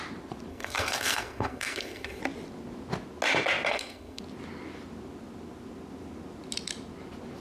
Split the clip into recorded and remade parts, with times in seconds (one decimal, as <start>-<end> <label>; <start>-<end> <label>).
0.0-0.5 recorded; 0.5-2.2 remade; 2.2-3.7 recorded; 3.7-4.2 remade; 4.2-7.4 recorded